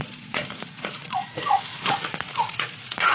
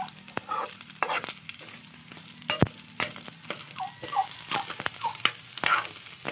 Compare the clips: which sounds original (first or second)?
second